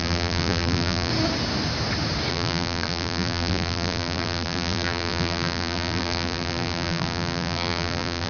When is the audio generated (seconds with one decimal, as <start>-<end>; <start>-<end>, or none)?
0.0-1.1; 2.3-8.3